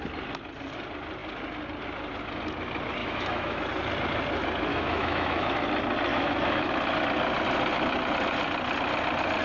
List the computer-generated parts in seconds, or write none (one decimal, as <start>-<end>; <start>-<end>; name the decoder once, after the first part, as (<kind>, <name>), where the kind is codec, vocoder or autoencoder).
3.0-3.6 (autoencoder, DAC-VAE); 4.7-5.5; 6.1-6.7